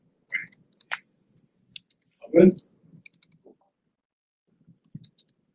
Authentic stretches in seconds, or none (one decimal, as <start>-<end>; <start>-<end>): 0.0-0.4; 1.6-5.5